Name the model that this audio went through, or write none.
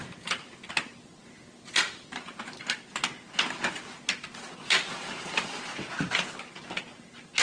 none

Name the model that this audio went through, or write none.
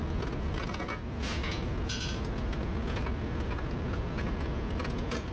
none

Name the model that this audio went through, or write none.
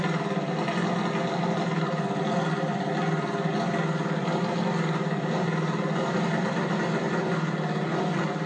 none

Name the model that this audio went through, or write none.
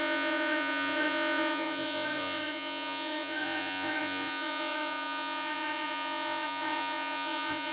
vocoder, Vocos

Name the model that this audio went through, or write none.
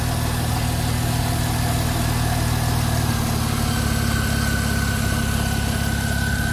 none